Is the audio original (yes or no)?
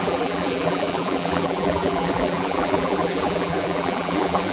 no